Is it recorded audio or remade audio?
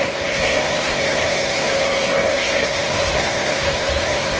remade